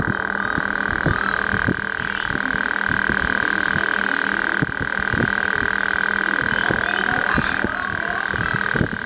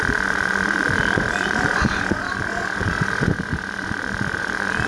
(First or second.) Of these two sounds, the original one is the first